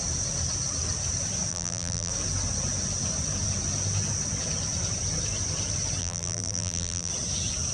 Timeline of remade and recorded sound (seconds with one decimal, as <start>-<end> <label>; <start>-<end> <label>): 0.0-1.5 recorded; 1.5-2.1 remade; 2.1-6.0 recorded; 6.0-7.1 remade; 7.1-7.7 recorded